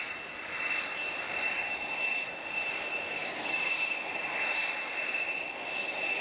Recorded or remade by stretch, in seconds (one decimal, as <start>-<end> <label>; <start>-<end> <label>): 0.0-3.2 recorded; 3.2-3.7 remade; 3.7-6.2 recorded